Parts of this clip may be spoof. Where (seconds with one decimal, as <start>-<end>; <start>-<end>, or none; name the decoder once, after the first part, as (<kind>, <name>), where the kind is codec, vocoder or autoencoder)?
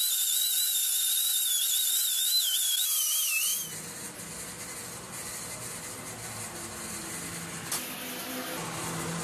none